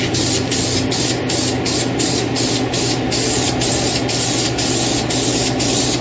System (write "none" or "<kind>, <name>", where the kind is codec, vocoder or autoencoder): none